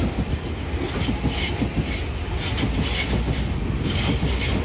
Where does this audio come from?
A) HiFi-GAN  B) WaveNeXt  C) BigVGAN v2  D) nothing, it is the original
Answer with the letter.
D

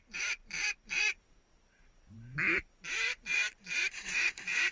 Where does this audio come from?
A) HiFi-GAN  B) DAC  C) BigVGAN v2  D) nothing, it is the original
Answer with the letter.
C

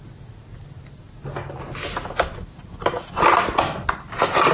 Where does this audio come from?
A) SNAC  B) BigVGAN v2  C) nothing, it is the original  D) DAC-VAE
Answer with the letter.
C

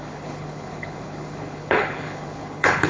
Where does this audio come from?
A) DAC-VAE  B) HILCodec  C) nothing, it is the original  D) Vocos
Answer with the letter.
B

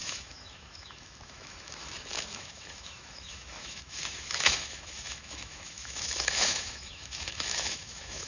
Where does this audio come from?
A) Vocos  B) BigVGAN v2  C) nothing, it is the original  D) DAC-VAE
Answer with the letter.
D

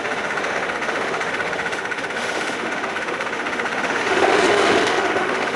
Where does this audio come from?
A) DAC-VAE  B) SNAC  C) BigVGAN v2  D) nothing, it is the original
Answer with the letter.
A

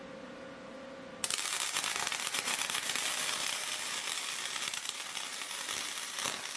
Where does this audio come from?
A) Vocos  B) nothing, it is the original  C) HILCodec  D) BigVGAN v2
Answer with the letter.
B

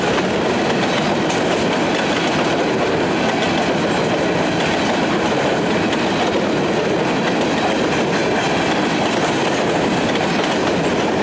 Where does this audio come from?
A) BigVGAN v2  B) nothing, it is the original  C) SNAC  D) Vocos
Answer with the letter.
B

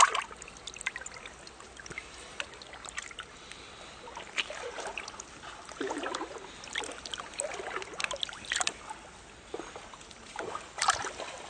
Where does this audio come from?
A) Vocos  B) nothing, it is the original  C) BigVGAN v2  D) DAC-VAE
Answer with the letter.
B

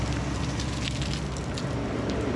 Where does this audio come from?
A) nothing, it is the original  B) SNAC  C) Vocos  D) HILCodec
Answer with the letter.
A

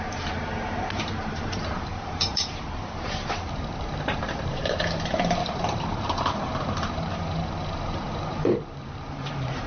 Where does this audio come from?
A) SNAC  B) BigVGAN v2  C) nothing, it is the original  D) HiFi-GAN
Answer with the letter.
B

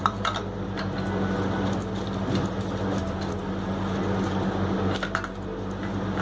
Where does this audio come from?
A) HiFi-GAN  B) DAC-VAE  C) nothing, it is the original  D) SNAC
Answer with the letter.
C